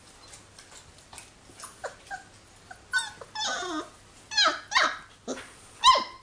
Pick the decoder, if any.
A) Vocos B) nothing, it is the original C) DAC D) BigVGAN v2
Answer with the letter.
B